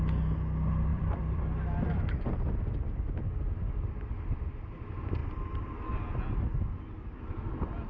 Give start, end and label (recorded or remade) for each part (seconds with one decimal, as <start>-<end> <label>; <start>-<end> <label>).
0.0-0.9 recorded; 0.9-1.4 remade; 1.4-5.2 recorded; 5.2-5.9 remade; 5.9-7.9 recorded